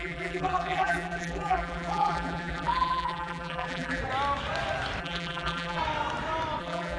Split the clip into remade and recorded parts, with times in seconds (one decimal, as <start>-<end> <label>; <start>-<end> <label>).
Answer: 0.0-4.0 remade; 4.0-5.0 recorded; 5.0-5.8 remade; 5.8-6.6 recorded; 6.6-7.0 remade